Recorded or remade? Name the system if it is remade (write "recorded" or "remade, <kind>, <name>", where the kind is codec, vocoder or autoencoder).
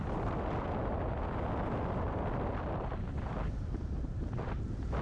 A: recorded